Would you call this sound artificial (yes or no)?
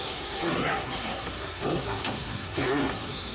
yes